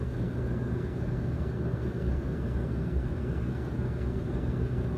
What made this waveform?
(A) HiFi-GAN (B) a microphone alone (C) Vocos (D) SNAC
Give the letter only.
D